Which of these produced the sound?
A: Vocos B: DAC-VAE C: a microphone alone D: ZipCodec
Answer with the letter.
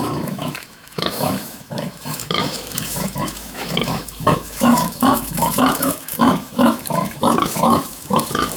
B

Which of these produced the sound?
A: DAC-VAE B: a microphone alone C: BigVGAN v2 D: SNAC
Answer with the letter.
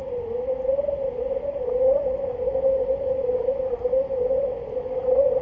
B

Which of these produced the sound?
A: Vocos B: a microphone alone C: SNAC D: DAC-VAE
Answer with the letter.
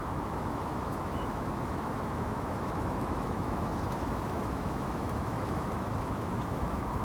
D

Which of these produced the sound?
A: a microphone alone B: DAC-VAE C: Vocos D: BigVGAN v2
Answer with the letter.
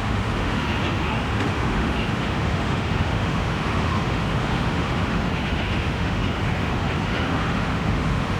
B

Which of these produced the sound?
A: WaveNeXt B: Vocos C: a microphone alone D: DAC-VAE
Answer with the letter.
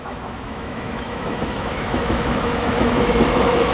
D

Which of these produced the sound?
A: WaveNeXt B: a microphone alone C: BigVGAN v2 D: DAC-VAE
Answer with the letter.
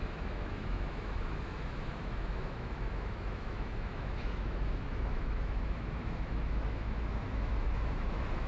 D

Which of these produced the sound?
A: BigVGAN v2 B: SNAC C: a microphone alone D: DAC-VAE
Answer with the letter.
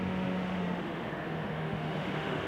D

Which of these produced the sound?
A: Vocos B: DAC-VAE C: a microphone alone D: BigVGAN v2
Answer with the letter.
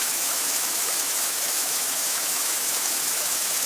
B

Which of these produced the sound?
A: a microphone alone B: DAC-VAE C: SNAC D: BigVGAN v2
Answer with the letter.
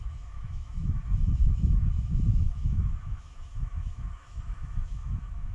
B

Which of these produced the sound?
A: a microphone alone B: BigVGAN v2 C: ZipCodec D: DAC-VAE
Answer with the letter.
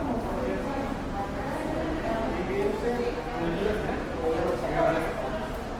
A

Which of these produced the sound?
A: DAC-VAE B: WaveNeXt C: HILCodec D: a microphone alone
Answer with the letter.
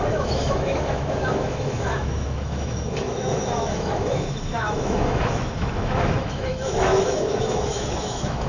A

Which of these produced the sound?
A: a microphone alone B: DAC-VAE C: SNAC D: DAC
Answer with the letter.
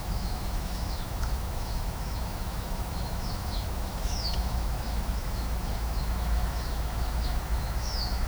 B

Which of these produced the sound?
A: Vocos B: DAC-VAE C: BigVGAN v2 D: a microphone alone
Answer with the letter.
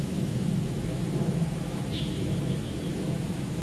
B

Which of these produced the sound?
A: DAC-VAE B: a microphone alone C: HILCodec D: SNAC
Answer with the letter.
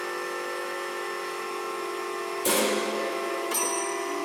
A